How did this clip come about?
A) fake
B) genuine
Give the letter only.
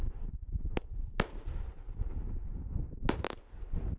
A